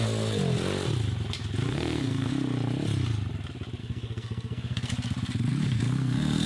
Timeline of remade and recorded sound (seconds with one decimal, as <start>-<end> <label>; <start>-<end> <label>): 0.0-1.7 recorded; 1.7-2.3 remade; 2.3-3.8 recorded; 3.8-4.9 remade; 4.9-5.5 recorded; 5.5-6.5 remade